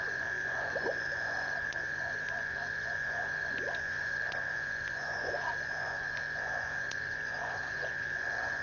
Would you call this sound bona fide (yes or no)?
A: no